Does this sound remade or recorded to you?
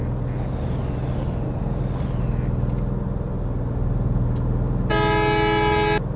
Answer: recorded